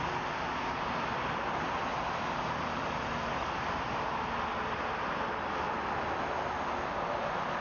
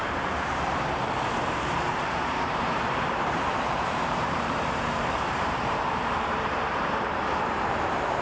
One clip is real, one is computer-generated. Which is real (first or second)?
first